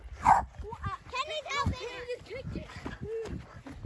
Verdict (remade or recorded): recorded